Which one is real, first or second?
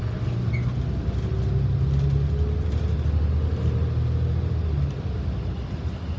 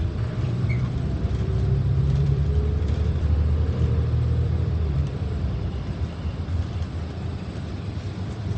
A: first